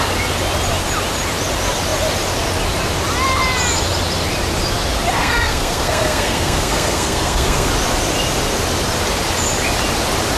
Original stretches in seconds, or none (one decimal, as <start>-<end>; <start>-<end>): 0.0-5.2; 7.7-10.4